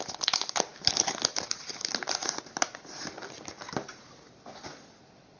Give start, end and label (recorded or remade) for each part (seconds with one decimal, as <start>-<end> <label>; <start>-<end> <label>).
0.0-5.4 recorded